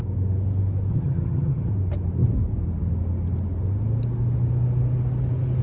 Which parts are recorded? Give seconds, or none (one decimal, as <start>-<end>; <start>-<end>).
0.0-0.9; 1.7-5.6

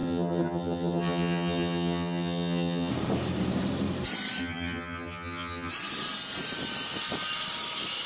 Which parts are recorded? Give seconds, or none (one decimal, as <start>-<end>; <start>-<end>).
2.9-4.4; 5.7-8.1

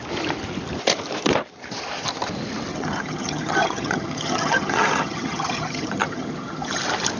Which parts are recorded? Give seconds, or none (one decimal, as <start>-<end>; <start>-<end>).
0.0-2.7; 6.8-7.2

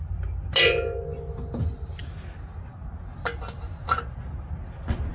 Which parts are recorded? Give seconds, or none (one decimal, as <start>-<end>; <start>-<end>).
0.0-5.1

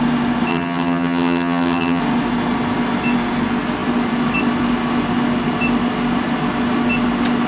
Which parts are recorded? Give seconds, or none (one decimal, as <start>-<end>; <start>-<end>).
0.0-0.5; 2.0-7.5